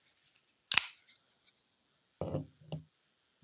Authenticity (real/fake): real